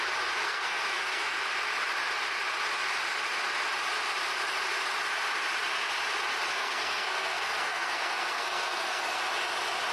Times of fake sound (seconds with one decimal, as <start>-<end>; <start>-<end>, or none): 0.4-1.4; 6.5-9.2